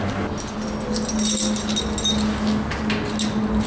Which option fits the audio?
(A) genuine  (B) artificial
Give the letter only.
A